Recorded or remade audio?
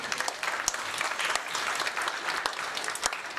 recorded